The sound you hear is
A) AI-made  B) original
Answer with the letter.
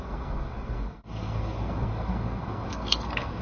A